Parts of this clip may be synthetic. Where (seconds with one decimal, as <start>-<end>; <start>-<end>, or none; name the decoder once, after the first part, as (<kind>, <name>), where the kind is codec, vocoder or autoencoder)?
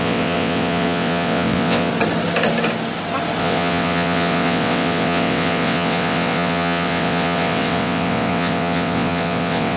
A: 0.0-1.9 (vocoder, WaveNeXt); 3.4-9.8